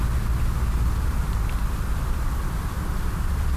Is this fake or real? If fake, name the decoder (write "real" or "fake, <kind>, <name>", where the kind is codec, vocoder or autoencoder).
real